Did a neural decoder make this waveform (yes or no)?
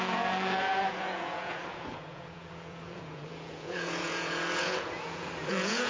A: yes